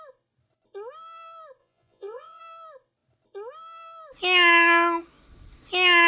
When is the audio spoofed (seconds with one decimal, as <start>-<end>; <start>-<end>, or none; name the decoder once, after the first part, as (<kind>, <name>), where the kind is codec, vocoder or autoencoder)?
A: 1.6-2.4 (vocoder, Vocos)